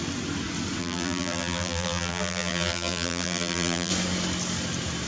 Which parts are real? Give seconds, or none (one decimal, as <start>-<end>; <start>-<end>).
0.0-0.8; 3.9-5.1